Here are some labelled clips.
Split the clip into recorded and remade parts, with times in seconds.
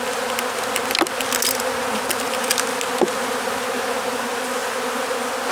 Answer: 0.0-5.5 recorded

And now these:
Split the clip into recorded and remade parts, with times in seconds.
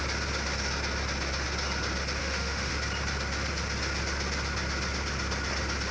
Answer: 0.0-2.2 recorded; 2.2-2.7 remade; 2.7-5.9 recorded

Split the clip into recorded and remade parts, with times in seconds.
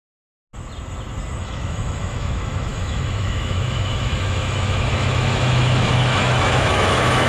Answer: 0.0-1.4 recorded; 1.4-7.3 remade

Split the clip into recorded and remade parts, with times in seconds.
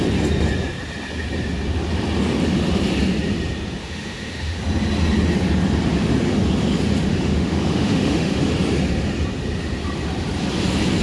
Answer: 0.0-3.8 recorded; 3.8-4.6 remade; 4.6-7.1 recorded; 7.1-8.4 remade; 8.4-11.0 recorded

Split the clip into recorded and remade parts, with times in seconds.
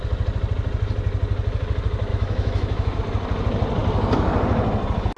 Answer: 0.0-2.1 recorded; 2.1-3.0 remade; 3.0-5.2 recorded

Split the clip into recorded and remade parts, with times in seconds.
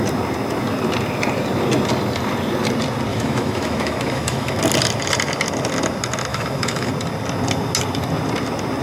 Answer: 0.0-3.1 recorded; 3.1-4.6 remade; 4.6-6.3 recorded; 6.3-6.9 remade; 6.9-8.8 recorded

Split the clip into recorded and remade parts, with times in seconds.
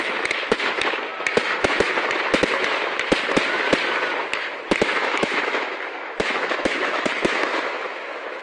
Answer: 0.0-5.0 recorded; 5.0-8.4 remade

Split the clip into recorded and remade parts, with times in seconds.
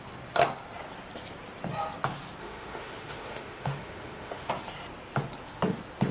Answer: 0.0-2.4 recorded; 2.4-4.5 remade; 4.5-6.1 recorded